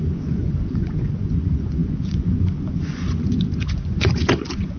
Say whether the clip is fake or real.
fake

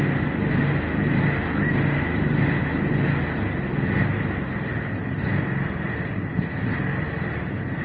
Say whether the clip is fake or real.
real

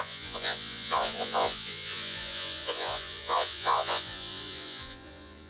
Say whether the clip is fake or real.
fake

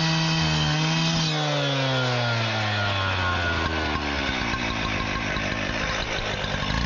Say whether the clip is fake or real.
real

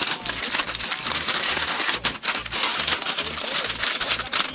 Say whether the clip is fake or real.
real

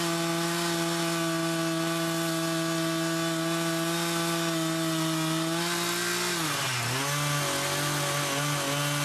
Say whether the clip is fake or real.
real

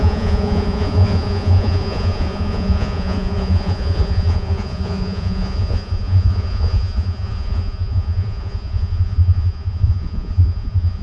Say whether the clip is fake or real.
fake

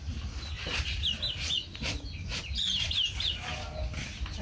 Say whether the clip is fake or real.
real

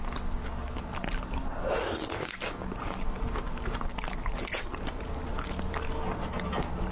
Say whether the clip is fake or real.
real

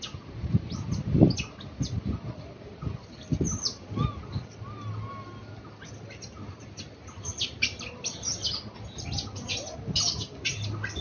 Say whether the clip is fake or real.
real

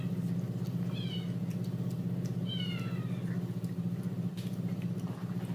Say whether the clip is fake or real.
real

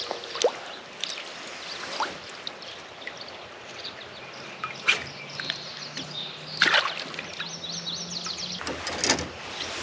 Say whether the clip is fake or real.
real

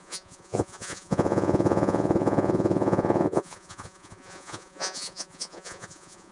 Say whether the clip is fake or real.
fake